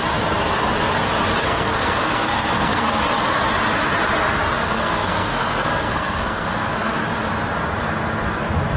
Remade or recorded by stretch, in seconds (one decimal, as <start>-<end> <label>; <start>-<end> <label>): 0.0-1.4 recorded; 1.4-2.9 remade; 2.9-4.6 recorded; 4.6-7.0 remade; 7.0-8.8 recorded